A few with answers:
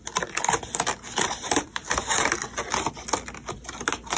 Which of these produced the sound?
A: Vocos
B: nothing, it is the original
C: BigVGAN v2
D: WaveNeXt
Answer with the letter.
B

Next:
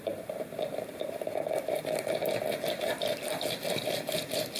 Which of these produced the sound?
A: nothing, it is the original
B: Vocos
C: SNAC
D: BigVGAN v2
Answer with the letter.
A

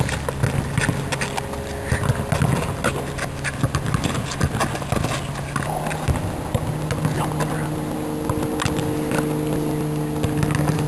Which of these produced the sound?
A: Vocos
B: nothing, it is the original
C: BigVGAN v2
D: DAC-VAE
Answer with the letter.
B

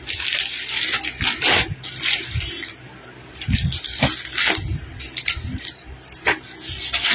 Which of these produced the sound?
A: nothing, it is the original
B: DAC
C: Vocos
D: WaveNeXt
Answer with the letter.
A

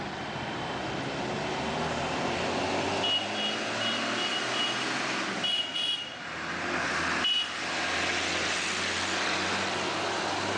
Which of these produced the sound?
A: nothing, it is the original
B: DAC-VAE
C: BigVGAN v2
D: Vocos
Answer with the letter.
A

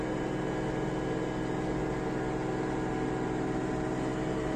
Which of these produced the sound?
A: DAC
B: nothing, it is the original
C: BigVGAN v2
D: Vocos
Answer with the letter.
B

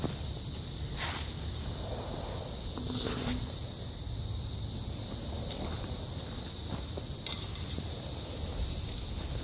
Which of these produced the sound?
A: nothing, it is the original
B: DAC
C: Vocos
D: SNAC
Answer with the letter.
A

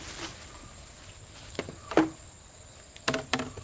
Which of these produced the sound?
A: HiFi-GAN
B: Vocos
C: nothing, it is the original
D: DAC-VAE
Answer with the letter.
C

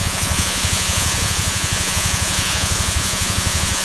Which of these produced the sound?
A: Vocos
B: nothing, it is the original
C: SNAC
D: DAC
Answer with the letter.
A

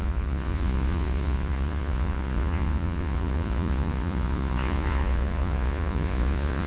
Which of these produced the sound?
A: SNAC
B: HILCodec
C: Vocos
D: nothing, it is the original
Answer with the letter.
C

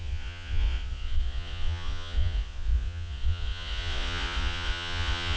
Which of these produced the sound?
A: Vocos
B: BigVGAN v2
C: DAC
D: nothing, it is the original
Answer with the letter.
A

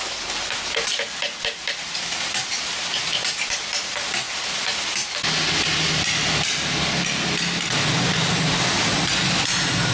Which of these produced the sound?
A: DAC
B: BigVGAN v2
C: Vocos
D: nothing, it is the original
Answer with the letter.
D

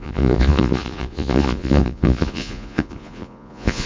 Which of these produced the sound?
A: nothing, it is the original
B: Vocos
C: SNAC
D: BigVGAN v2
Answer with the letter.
B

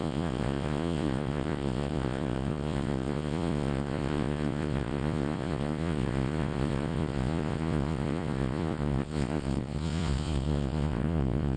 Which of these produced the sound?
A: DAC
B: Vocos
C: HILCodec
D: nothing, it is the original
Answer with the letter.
B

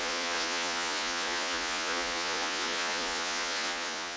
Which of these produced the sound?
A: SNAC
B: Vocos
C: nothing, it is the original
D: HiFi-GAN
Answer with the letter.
B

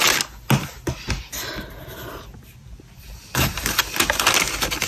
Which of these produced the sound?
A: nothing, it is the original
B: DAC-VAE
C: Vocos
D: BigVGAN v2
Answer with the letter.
A